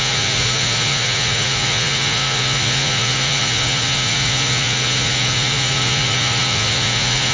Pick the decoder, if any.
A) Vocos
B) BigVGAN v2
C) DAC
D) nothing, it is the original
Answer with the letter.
A